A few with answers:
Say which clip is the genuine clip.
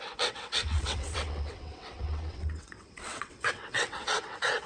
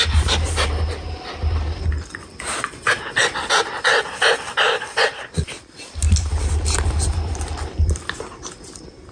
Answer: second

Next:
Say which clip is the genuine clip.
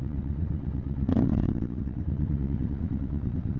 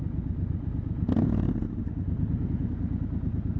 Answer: second